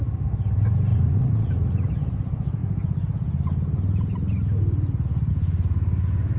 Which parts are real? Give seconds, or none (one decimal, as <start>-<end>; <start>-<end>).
0.0-0.9; 1.9-6.4